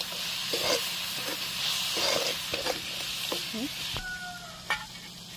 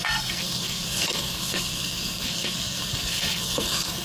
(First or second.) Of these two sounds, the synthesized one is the second